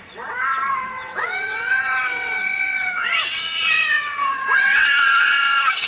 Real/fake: fake